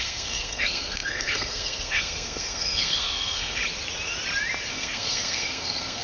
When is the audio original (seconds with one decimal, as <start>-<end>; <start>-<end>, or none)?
3.6-4.7